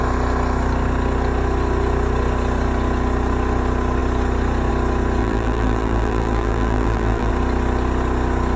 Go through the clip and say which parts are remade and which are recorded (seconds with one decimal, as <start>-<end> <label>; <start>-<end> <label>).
0.0-5.2 recorded; 5.2-7.3 remade; 7.3-8.6 recorded